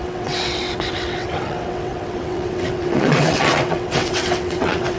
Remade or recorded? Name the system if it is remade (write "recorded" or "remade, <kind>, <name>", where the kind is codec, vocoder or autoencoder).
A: remade, vocoder, WaveNeXt